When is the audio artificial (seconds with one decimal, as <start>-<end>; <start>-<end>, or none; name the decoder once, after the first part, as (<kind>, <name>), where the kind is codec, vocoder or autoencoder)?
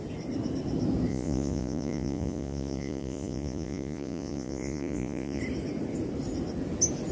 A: 1.1-5.4 (vocoder, Vocos)